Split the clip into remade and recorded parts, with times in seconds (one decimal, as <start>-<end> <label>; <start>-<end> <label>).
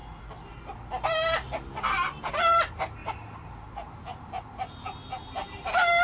0.0-3.0 recorded; 3.0-3.5 remade; 3.5-6.0 recorded